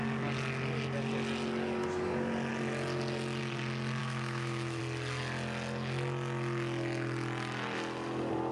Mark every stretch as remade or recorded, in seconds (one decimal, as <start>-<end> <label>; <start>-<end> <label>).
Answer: 0.0-4.0 recorded; 4.0-4.8 remade; 4.8-8.5 recorded